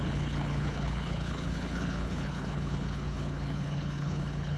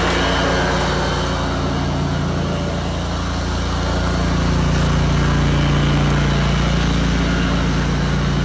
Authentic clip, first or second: second